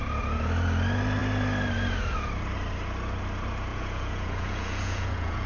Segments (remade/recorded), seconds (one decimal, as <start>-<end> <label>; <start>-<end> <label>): 0.0-3.7 recorded; 3.7-5.5 remade